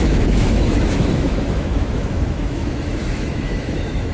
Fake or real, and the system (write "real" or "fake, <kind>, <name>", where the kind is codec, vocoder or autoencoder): fake, autoencoder, DAC-VAE